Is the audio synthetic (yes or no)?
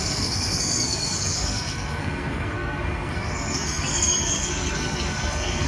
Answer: yes